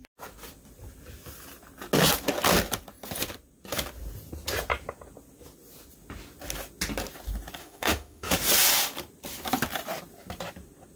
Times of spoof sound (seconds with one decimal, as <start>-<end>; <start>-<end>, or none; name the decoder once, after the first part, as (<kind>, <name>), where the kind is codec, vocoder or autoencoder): 7.6-8.3 (autoencoder, DAC-VAE)

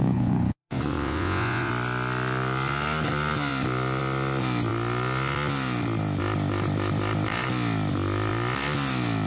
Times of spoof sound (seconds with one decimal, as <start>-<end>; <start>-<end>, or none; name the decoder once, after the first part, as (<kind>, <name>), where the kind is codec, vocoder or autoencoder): 0.0-1.7 (vocoder, Vocos)